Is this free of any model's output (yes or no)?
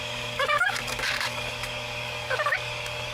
no